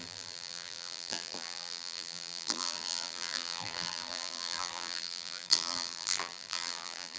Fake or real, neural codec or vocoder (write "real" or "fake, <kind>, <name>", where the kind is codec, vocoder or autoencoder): fake, vocoder, BigVGAN v2